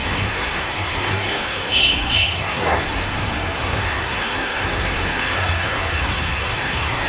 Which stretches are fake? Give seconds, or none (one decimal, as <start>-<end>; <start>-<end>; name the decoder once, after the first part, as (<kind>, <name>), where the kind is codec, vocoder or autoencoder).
0.0-7.1 (codec, SNAC)